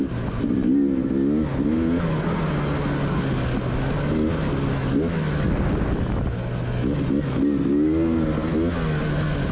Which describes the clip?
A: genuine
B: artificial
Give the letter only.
A